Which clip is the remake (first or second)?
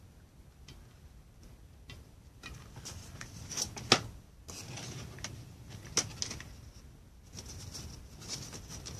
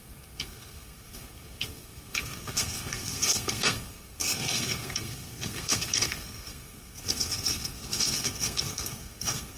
second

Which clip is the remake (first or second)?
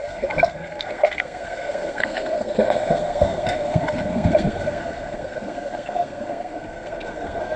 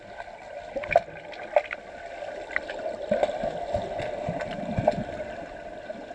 first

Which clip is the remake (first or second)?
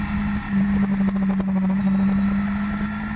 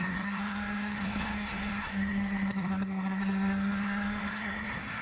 second